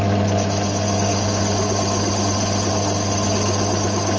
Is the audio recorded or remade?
recorded